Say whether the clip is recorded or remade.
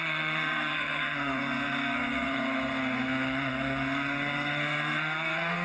remade